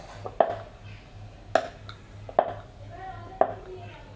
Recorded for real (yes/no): yes